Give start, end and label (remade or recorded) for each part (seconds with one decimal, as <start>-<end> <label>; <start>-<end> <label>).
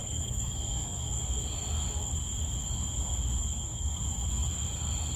0.0-1.2 remade; 1.2-3.4 recorded; 3.4-4.0 remade; 4.0-5.2 recorded